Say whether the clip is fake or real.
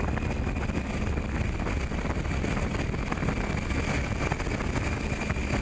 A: real